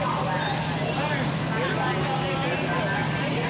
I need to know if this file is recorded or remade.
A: recorded